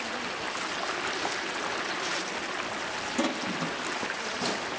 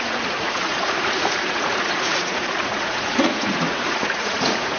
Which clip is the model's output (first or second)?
second